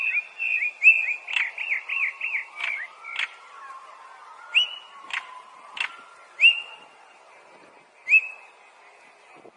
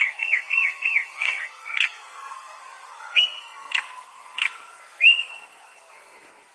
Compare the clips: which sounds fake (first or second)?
second